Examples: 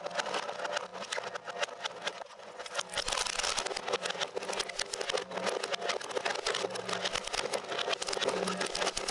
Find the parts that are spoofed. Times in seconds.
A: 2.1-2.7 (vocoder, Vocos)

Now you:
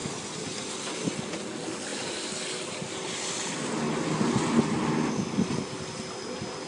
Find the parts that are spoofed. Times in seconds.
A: none